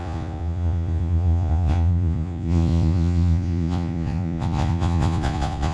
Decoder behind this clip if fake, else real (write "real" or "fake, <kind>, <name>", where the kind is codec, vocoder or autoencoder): fake, vocoder, Vocos